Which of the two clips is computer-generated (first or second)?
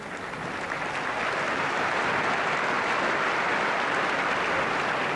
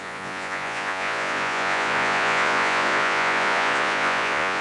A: second